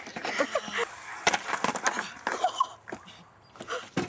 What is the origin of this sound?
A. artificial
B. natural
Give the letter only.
B